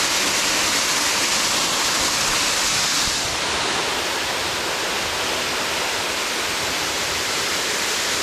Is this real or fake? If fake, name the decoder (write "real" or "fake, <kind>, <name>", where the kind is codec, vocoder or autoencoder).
real